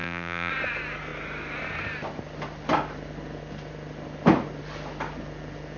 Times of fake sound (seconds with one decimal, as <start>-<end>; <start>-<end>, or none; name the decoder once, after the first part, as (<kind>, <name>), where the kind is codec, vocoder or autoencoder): 0.0-0.5 (vocoder, BigVGAN v2)